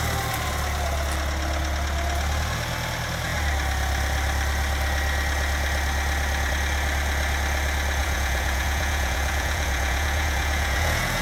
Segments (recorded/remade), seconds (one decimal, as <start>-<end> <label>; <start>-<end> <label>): 0.0-8.0 recorded; 8.0-11.2 remade